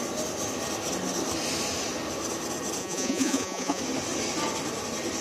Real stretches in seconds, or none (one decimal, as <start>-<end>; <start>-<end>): 0.0-2.8; 3.8-5.2